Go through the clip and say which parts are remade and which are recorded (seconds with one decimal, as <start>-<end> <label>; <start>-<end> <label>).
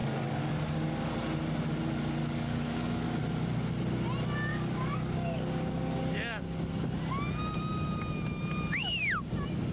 0.0-1.1 remade; 1.1-2.2 recorded; 2.2-3.2 remade; 3.2-4.5 recorded; 4.5-6.0 remade; 6.0-9.7 recorded